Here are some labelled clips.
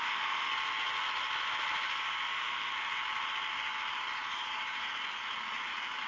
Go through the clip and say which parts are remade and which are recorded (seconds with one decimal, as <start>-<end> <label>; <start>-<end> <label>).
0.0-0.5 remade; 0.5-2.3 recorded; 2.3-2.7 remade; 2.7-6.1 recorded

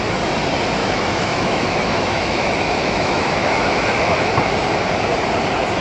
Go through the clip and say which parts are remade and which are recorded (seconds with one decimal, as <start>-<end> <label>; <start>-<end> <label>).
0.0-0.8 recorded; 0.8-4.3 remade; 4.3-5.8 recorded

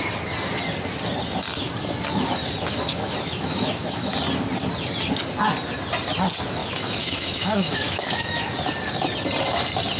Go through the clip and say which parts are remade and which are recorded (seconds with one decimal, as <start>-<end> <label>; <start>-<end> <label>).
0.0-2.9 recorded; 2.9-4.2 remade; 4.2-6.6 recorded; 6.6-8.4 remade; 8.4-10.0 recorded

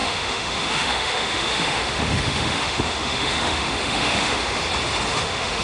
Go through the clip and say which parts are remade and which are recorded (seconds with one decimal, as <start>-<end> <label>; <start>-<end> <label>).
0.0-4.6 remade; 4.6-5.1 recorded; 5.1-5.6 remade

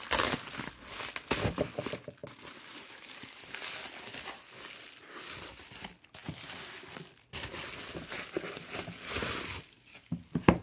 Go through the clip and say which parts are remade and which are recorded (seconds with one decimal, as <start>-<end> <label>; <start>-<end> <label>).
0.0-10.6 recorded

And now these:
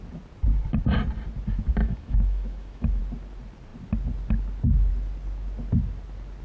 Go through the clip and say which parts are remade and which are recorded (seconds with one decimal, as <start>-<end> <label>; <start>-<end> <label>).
0.0-1.8 recorded; 1.8-3.0 remade; 3.0-6.4 recorded